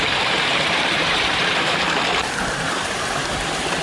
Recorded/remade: remade